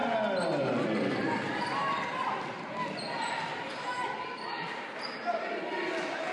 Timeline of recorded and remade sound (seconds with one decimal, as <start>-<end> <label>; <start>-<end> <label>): 0.0-6.3 recorded